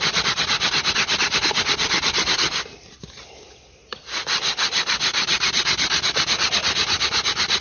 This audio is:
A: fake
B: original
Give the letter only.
B